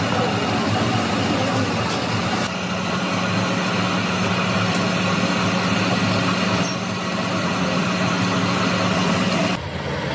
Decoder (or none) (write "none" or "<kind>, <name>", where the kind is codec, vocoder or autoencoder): none